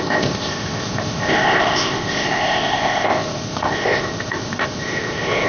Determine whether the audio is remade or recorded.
remade